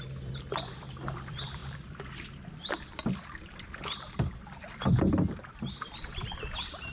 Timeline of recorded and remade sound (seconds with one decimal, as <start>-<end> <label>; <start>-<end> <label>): 0.0-6.9 remade